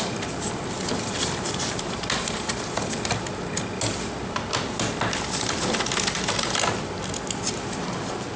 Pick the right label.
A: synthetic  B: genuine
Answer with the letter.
B